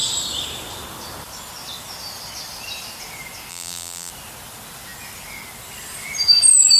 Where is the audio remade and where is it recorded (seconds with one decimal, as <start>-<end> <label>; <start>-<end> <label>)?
0.0-3.5 recorded; 3.5-4.1 remade; 4.1-6.8 recorded